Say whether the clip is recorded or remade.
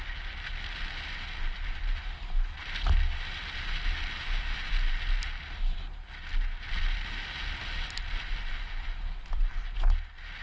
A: recorded